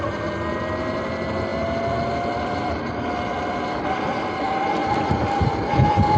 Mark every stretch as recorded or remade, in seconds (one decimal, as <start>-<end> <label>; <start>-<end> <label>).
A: 0.0-6.2 recorded